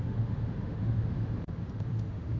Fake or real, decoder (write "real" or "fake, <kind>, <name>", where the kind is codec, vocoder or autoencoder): fake, autoencoder, DAC-VAE